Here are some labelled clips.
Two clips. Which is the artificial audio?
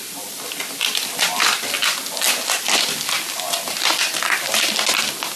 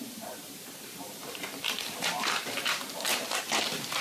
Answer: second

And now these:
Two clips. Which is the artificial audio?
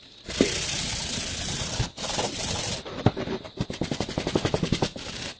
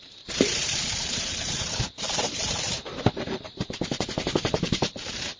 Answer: second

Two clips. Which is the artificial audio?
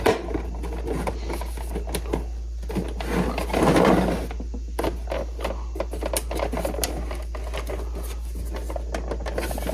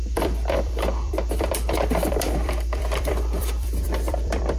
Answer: second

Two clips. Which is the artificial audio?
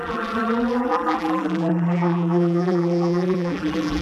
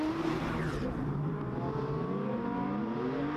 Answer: first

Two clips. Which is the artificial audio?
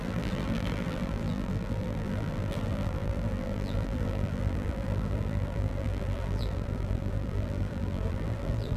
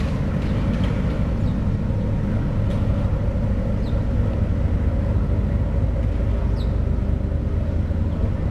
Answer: first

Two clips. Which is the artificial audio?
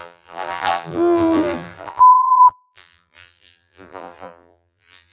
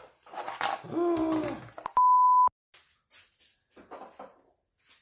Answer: first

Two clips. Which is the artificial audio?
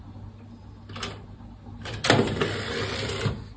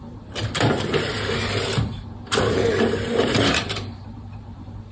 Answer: second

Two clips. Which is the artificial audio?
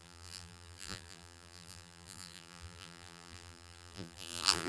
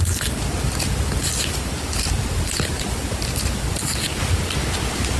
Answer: first